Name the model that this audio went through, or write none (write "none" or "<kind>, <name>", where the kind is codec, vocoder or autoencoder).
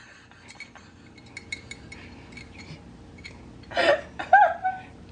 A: none